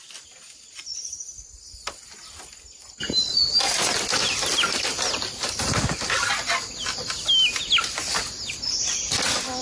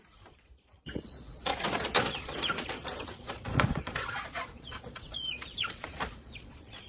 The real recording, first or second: first